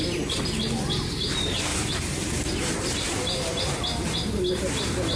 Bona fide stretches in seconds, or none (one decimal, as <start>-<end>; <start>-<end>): 0.0-1.7; 3.8-5.2